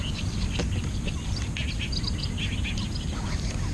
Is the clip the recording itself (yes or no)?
yes